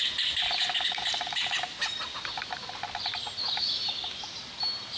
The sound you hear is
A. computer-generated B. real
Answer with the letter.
B